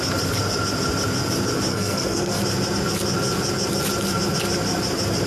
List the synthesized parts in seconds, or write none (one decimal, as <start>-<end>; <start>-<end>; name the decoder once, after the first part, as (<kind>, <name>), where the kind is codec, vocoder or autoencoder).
1.7-2.4 (codec, SNAC)